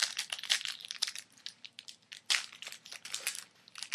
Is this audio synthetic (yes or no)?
no